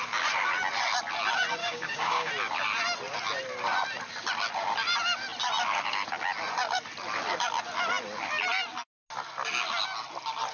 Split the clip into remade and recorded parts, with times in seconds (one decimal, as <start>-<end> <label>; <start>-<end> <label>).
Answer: 0.0-1.6 recorded; 1.6-2.3 remade; 2.3-10.5 recorded